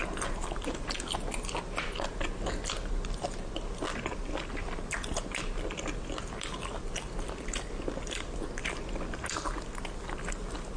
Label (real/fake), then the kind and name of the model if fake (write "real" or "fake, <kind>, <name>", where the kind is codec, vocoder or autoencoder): real